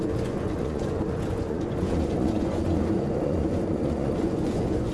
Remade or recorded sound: remade